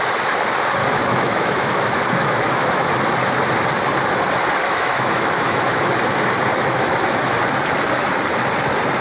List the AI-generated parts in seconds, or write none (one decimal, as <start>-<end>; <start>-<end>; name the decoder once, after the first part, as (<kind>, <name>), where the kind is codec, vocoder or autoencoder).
0.8-2.9 (autoencoder, DAC-VAE); 4.6-5.9; 6.5-7.3

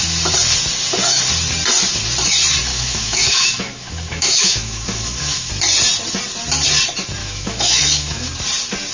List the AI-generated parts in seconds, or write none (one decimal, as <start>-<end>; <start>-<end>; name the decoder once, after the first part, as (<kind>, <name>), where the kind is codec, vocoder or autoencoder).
2.7-5.5 (autoencoder, DAC-VAE); 7.2-8.3

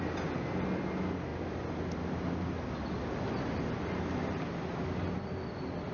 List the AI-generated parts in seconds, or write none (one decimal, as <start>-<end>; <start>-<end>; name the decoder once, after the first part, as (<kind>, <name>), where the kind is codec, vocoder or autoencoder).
none